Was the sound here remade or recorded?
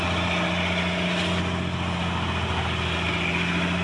recorded